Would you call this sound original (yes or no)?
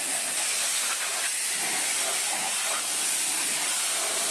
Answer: yes